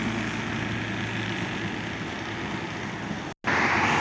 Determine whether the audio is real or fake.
real